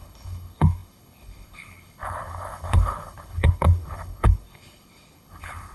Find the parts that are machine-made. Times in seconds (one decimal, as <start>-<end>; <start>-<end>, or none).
0.0-5.7